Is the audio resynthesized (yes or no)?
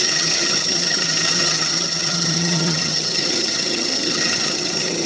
yes